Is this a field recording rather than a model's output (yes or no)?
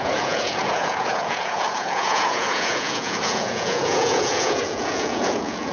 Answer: no